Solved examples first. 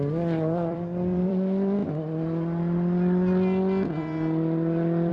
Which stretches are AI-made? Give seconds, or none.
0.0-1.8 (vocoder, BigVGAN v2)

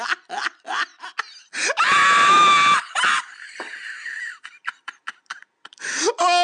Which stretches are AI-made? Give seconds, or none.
3.8-6.0 (vocoder, BigVGAN v2)

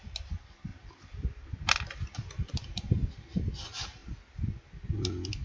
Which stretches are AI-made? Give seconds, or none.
0.7-3.4 (vocoder, BigVGAN v2)

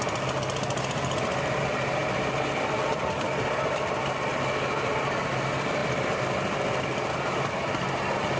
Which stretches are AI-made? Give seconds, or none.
5.8-6.8 (vocoder, BigVGAN v2)

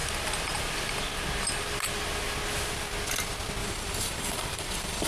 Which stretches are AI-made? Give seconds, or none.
3.6-5.1 (vocoder, BigVGAN v2)

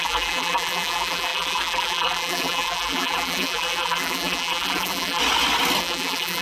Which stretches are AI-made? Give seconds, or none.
0.0-5.2 (vocoder, BigVGAN v2); 5.8-6.4

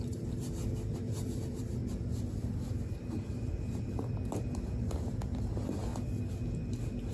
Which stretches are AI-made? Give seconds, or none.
0.0-1.8 (vocoder, BigVGAN v2); 2.7-5.9